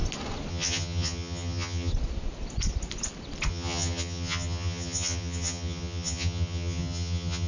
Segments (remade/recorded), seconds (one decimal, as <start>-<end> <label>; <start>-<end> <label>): 0.0-0.5 recorded; 0.5-1.9 remade; 1.9-3.5 recorded; 3.5-7.5 remade